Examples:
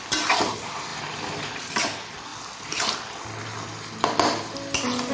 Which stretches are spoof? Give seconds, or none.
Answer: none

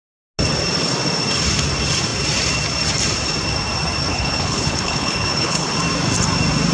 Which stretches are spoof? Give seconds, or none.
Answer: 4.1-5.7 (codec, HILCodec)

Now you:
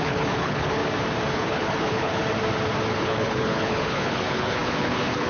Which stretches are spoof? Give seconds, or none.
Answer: 0.0-0.8 (codec, HILCodec); 1.3-2.2; 2.9-5.3

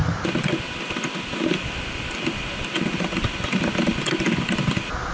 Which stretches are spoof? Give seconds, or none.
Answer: none

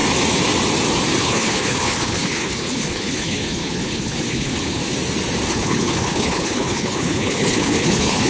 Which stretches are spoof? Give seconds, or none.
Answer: 1.2-4.8 (codec, HILCodec); 5.5-8.3